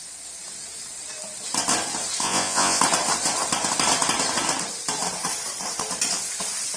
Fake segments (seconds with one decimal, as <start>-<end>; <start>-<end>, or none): 2.2-2.8